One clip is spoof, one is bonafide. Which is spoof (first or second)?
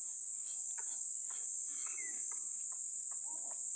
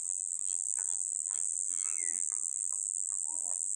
second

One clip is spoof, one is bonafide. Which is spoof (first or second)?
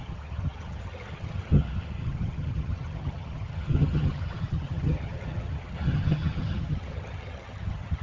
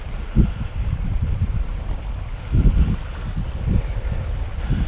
first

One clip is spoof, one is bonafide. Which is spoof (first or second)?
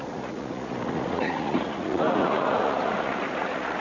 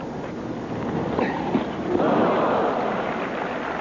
first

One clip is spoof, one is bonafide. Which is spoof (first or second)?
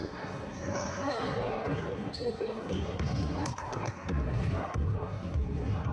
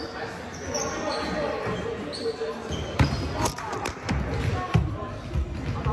first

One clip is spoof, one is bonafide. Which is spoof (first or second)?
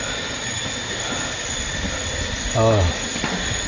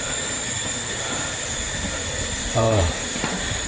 second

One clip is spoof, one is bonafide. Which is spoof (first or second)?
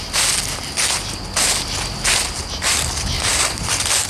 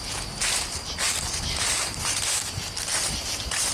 second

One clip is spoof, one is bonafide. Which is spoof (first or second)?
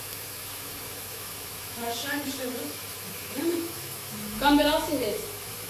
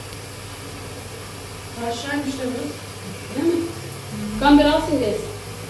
first